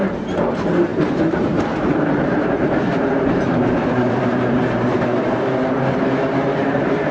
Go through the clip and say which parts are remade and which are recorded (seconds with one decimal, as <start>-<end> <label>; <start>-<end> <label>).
0.0-7.1 remade